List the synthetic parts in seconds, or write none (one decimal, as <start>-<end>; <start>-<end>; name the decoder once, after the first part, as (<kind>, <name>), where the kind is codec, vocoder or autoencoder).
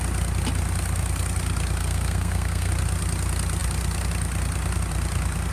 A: 1.8-2.7 (codec, SNAC)